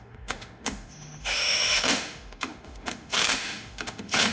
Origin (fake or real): fake